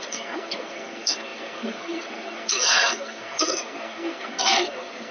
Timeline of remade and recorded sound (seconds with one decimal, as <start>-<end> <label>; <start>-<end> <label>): 0.0-5.1 remade